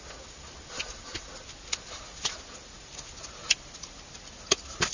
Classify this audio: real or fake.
real